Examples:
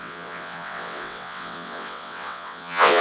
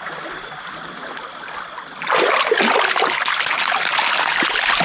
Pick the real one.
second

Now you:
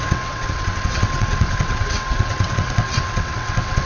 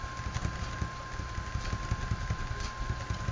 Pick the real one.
second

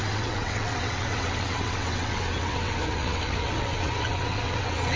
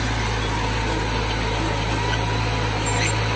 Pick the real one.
second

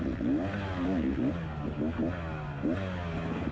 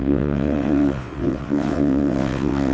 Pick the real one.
first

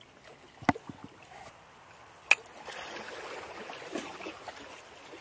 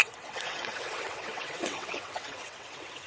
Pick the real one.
first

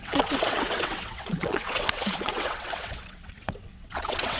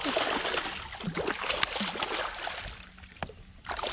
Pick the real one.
second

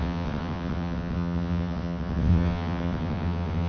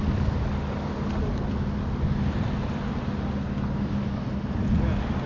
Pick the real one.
second